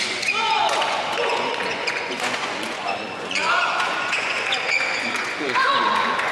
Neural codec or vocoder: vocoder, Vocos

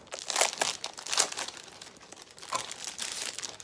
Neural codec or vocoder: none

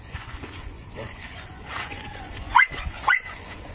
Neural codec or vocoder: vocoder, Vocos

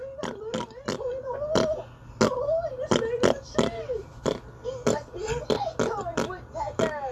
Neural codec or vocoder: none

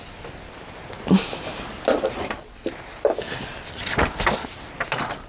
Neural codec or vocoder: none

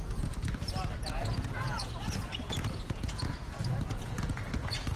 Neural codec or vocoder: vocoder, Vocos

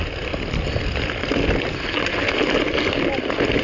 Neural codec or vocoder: none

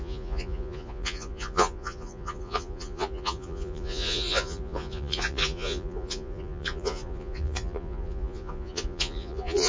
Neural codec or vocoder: vocoder, Vocos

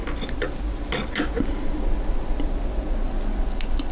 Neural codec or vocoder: none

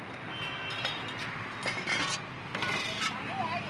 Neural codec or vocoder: none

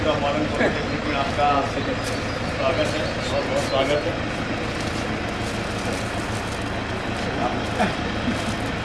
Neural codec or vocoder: none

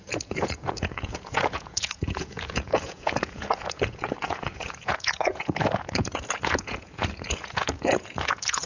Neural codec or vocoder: vocoder, Vocos